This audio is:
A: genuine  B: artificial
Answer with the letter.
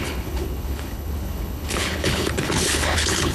B